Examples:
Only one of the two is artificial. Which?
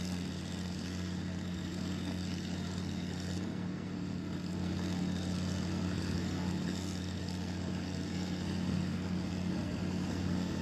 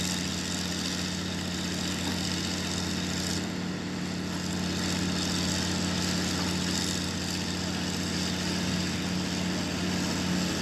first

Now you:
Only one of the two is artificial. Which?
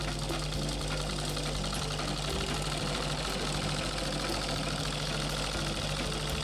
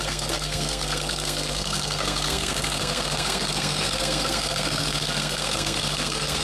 second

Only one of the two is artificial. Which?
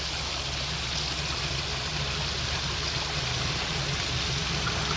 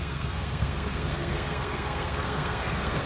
second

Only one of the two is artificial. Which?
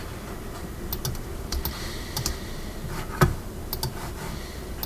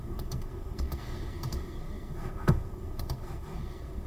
second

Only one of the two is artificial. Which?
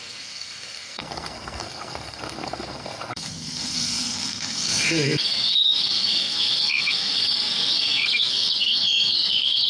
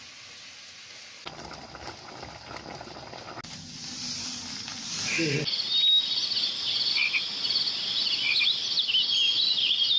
first